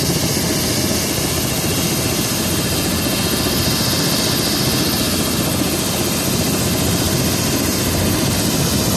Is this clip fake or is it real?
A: real